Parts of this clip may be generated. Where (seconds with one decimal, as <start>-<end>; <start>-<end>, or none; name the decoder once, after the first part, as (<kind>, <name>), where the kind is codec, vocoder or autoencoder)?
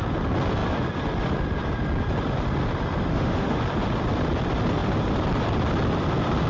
3.1-3.6 (autoencoder, DAC-VAE)